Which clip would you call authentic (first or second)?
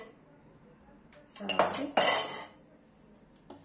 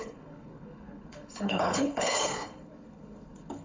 first